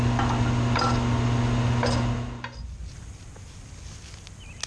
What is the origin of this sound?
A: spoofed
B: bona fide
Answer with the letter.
B